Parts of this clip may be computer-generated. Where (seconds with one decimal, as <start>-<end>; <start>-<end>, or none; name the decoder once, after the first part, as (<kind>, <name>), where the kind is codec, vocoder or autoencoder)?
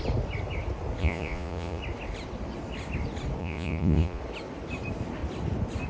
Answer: 1.0-1.8 (vocoder, Vocos); 3.4-4.2